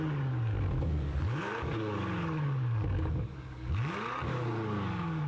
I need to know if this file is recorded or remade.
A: remade